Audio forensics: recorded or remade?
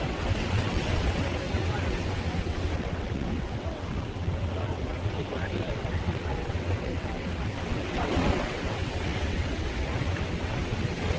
remade